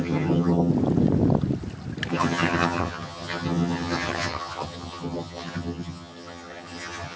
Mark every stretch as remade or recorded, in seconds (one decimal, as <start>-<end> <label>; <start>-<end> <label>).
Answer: 0.0-0.7 remade; 0.7-2.1 recorded; 2.1-7.2 remade